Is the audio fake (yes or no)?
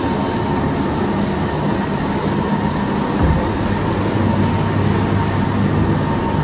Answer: no